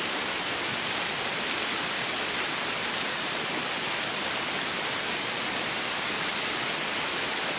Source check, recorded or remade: recorded